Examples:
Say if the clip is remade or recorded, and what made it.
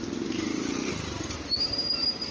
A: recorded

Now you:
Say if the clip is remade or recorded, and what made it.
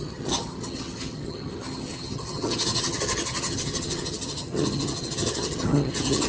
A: remade, vocoder, HiFi-GAN